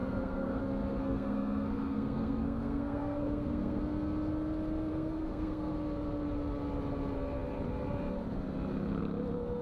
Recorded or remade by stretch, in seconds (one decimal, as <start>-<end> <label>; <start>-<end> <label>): 0.0-0.6 remade; 0.6-1.0 recorded; 1.0-3.8 remade; 3.8-4.9 recorded; 4.9-5.7 remade; 5.7-9.6 recorded